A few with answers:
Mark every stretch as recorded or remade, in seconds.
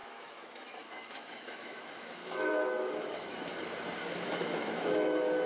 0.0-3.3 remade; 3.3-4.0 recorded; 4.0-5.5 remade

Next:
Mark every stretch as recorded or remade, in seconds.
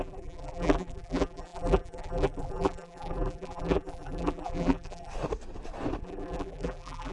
0.0-5.1 remade; 5.1-6.0 recorded; 6.0-7.1 remade